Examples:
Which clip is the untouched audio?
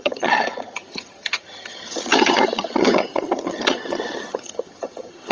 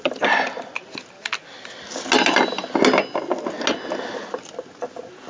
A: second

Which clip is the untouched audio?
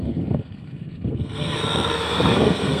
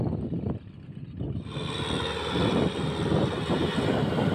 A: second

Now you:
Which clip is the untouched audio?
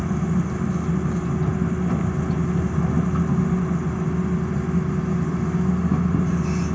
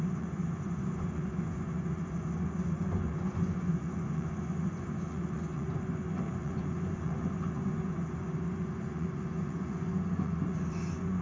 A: first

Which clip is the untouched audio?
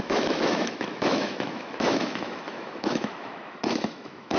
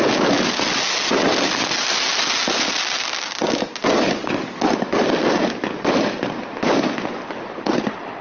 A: second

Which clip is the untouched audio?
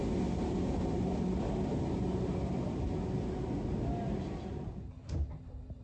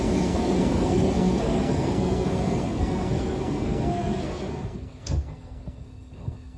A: first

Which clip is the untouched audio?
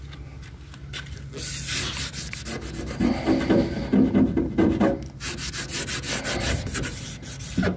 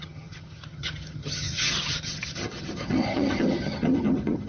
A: first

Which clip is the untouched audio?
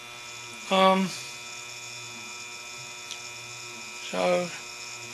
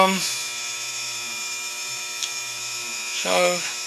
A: first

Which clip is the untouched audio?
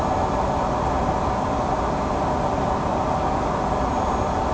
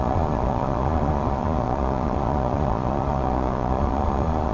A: first